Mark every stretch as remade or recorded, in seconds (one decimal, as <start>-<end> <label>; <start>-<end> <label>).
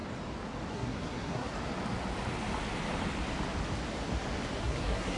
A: 0.0-0.7 recorded; 0.7-1.5 remade; 1.5-4.6 recorded; 4.6-5.2 remade